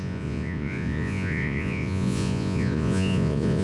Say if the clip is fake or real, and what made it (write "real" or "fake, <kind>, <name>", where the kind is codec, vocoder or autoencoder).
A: fake, vocoder, Vocos